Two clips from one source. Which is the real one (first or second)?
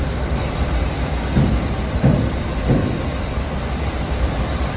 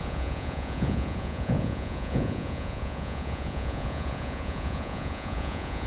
first